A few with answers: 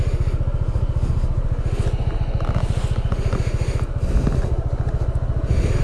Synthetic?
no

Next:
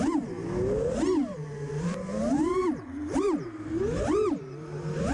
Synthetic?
no